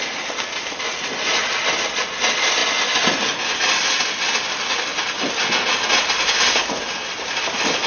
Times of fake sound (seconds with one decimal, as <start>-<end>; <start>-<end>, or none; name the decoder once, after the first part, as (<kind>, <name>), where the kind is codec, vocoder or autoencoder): none